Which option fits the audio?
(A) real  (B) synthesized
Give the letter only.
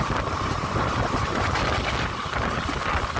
A